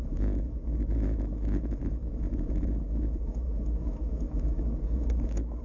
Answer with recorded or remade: remade